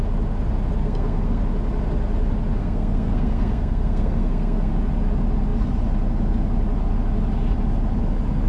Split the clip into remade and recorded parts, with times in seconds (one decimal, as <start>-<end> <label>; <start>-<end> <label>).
0.0-0.8 recorded; 0.8-1.4 remade; 1.4-2.6 recorded; 2.6-4.7 remade; 4.7-8.5 recorded